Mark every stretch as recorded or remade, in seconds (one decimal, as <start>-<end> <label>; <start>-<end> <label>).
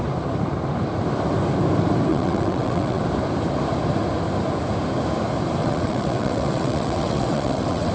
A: 0.0-2.1 recorded; 2.1-3.0 remade; 3.0-5.6 recorded; 5.6-7.9 remade